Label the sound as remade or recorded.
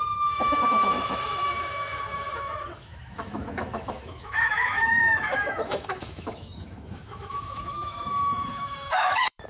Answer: remade